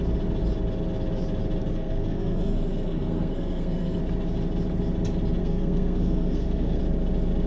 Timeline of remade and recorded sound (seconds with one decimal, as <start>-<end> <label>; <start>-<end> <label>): 0.0-1.7 recorded; 1.7-4.0 remade; 4.0-5.4 recorded; 5.4-6.8 remade; 6.8-7.5 recorded